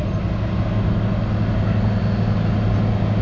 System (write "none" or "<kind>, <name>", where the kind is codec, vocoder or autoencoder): none